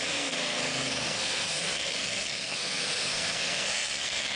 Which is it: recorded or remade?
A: remade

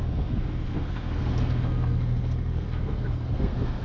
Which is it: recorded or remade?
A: remade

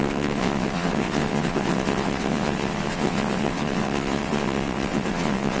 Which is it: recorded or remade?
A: remade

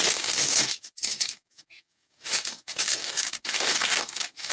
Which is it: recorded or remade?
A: remade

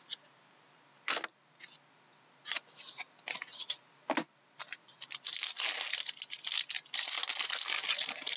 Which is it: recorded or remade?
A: recorded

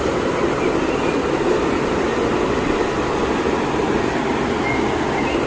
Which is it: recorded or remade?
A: recorded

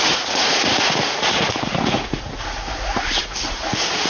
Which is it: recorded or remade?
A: remade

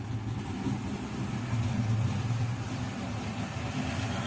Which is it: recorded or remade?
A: recorded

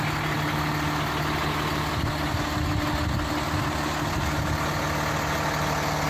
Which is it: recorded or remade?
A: recorded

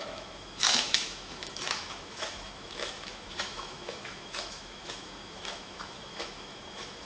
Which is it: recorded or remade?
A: remade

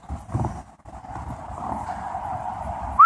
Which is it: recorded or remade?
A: recorded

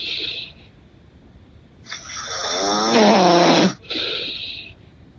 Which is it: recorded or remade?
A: recorded